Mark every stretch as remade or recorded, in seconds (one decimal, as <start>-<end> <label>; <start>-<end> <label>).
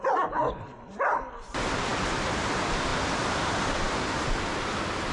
0.0-1.9 remade; 1.9-2.5 recorded; 2.5-2.9 remade; 2.9-4.6 recorded; 4.6-5.1 remade